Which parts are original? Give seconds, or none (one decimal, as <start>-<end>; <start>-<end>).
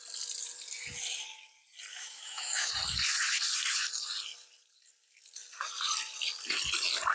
0.0-1.9; 2.7-7.1